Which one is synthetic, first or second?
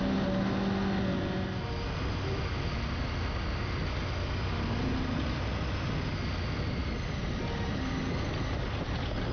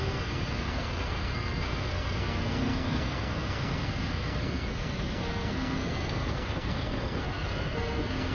second